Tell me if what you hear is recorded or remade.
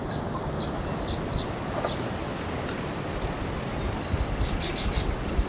recorded